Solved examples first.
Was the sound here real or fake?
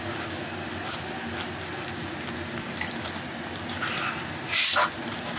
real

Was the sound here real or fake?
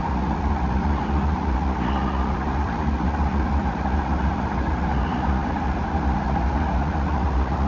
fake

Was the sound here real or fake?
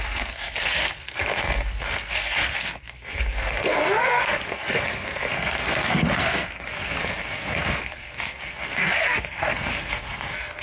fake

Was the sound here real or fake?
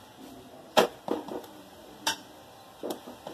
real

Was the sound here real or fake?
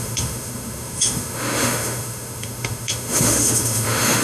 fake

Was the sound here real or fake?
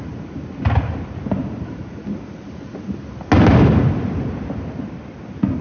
real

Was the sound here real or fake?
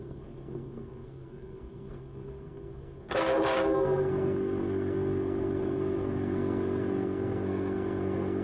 fake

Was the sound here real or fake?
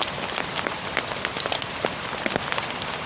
real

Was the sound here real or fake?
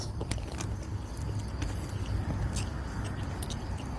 real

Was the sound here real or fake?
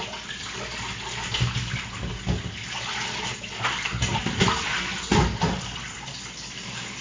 real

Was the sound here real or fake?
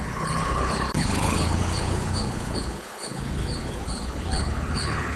fake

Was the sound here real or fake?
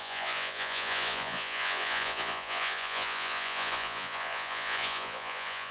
fake